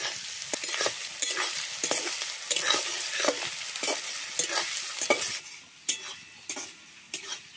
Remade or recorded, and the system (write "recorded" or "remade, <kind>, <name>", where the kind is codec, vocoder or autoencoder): recorded